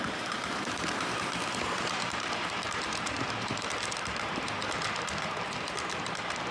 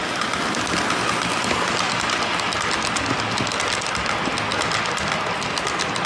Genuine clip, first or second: second